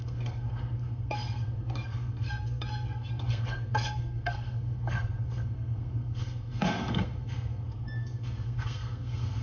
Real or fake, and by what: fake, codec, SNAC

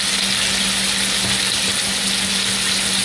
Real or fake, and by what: real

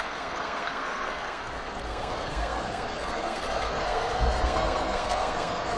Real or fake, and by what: fake, codec, SNAC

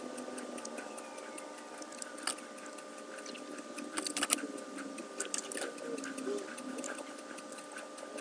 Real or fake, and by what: real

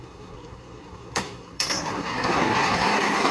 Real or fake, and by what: fake, codec, SNAC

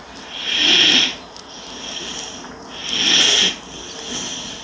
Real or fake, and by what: real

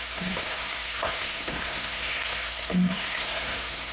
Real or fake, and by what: fake, codec, SNAC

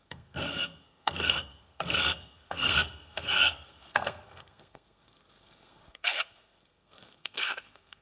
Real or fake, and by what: fake, codec, SNAC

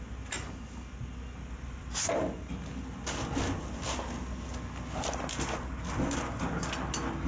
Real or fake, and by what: real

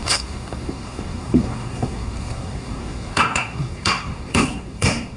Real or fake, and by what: fake, codec, SNAC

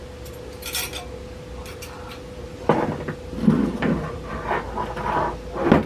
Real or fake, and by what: real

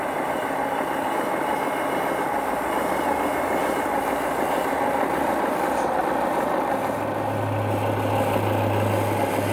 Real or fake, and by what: real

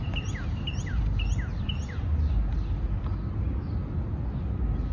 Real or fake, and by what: real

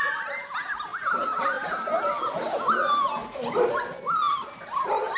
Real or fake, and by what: real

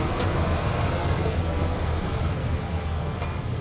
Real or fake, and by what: fake, codec, SNAC